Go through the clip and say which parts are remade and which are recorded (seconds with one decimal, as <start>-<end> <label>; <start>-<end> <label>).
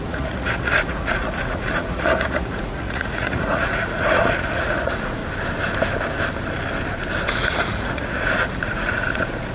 0.0-5.2 remade; 5.2-7.3 recorded; 7.3-9.5 remade